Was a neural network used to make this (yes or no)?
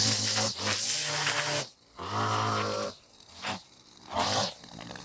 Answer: no